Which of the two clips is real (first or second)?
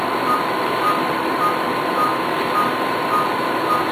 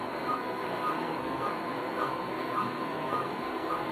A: first